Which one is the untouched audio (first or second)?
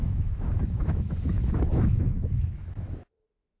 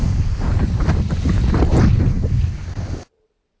second